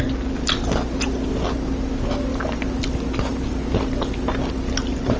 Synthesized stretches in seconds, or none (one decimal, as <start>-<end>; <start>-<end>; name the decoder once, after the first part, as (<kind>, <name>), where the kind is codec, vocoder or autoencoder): none

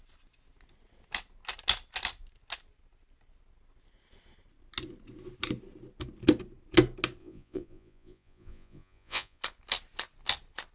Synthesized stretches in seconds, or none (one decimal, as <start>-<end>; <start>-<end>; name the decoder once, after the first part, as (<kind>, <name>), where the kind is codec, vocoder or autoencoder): 7.2-9.4 (vocoder, Vocos)

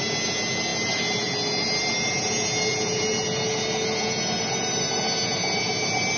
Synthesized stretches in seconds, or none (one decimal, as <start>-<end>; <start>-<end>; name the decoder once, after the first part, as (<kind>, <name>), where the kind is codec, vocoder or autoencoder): none

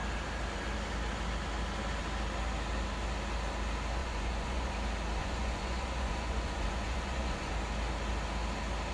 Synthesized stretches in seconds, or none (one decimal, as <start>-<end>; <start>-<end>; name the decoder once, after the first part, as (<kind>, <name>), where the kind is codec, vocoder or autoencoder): 4.0-4.7 (vocoder, Vocos); 5.2-7.5

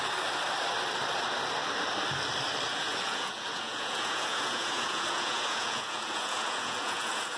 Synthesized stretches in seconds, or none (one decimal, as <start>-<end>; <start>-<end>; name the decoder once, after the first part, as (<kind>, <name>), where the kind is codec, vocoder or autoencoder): 2.8-7.4 (vocoder, Vocos)

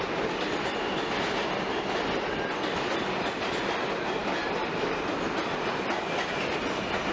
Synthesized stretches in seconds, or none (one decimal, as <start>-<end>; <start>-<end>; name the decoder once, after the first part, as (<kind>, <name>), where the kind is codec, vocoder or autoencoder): none